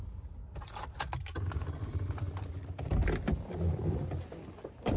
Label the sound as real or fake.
real